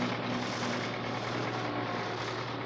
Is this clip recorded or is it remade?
recorded